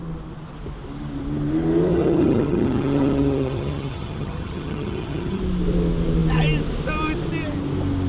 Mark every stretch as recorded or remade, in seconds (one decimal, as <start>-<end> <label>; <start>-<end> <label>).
0.0-1.9 recorded; 1.9-5.4 remade; 5.4-8.1 recorded